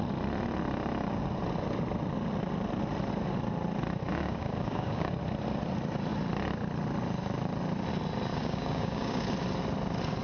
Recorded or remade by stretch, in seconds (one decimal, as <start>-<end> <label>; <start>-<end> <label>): 0.0-4.1 recorded; 4.1-5.1 remade; 5.1-8.3 recorded; 8.3-9.2 remade; 9.2-10.2 recorded